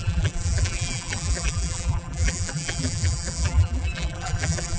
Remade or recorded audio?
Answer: remade